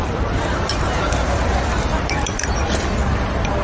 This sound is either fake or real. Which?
fake